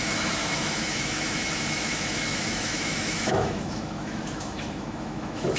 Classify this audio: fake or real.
fake